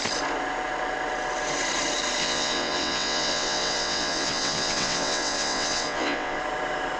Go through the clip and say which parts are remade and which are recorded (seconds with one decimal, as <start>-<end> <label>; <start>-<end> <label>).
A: 0.0-2.2 recorded; 2.2-6.4 remade; 6.4-7.0 recorded